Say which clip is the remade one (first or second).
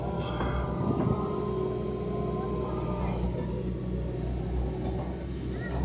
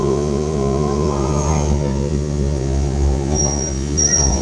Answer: second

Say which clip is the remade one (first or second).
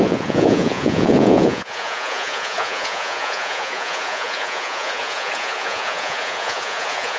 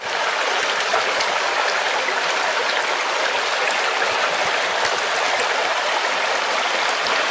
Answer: first